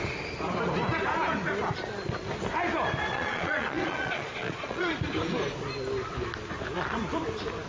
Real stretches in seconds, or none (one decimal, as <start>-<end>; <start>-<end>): 0.0-3.1; 4.9-7.7

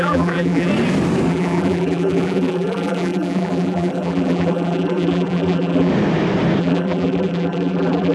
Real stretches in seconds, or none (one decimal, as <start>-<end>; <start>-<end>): 0.7-1.3; 5.9-6.6

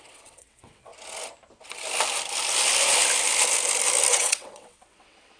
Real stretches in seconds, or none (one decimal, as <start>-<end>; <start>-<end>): 0.9-4.1

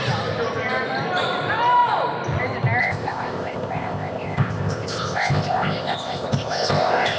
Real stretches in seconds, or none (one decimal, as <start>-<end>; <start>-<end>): 0.0-2.8

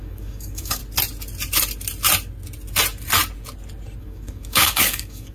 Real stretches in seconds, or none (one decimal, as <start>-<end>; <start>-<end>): 0.8-4.0

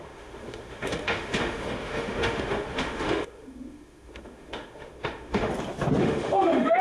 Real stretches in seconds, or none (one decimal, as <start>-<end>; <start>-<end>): 5.5-6.0

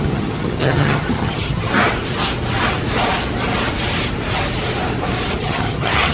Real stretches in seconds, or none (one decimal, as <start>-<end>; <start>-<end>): 1.7-5.4